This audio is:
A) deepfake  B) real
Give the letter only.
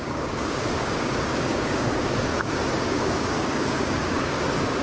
A